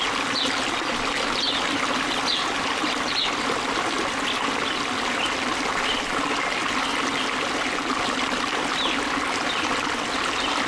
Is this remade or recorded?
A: recorded